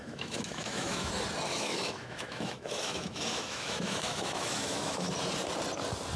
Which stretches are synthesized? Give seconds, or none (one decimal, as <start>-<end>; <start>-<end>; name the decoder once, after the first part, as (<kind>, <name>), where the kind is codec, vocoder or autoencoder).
0.0-1.1 (autoencoder, DAC-VAE); 1.5-5.1